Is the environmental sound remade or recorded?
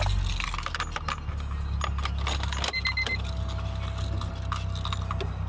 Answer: recorded